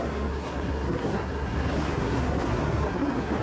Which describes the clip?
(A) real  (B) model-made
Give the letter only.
B